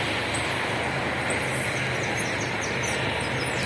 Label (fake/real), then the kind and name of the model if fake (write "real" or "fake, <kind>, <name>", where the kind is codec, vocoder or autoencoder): real